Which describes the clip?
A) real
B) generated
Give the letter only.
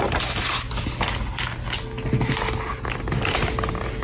A